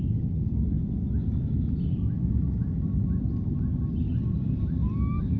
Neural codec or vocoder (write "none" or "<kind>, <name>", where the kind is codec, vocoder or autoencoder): none